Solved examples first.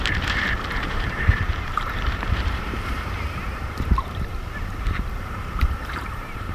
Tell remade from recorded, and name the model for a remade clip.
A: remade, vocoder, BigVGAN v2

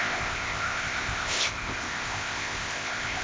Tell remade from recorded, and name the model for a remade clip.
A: remade, codec, ZipCodec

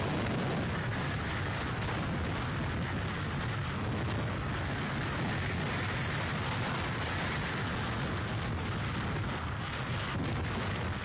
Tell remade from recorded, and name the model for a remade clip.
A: recorded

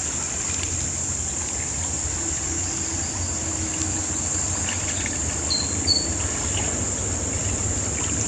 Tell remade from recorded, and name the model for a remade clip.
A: recorded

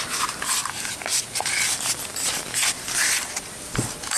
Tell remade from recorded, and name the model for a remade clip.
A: recorded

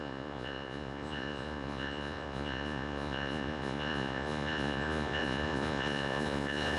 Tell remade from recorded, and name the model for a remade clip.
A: remade, vocoder, Vocos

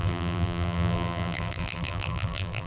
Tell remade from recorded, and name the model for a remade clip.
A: remade, vocoder, BigVGAN v2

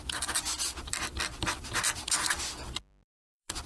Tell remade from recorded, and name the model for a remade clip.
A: remade, vocoder, BigVGAN v2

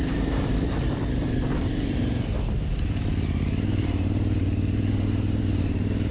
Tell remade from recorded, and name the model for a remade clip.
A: remade, vocoder, BigVGAN v2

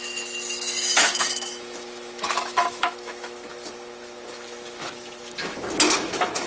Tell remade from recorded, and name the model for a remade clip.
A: remade, autoencoder, DAC-VAE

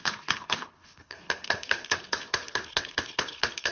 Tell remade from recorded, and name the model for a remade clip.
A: remade, codec, HILCodec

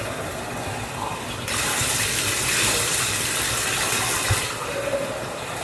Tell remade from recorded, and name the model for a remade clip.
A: recorded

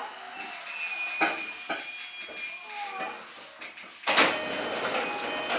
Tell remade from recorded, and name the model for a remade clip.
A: recorded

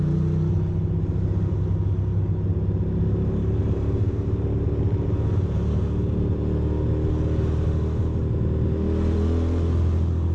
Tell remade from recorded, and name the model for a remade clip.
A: recorded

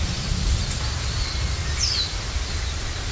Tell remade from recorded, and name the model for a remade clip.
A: recorded